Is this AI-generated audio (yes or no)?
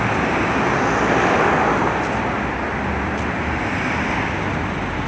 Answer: no